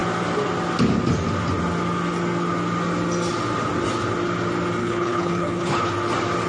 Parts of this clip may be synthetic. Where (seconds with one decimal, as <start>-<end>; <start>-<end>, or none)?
4.8-5.9